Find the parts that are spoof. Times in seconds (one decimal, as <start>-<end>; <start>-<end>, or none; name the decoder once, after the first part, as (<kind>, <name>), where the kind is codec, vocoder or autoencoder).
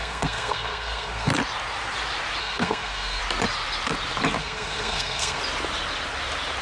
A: 0.0-1.3 (codec, SNAC); 2.4-3.2; 4.4-5.4